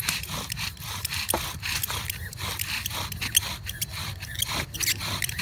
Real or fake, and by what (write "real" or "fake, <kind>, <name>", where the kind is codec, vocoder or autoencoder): real